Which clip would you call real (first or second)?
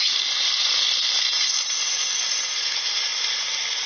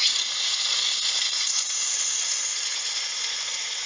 first